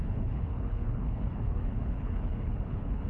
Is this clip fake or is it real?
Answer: fake